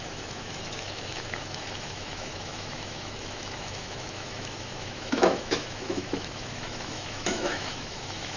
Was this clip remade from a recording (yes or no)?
yes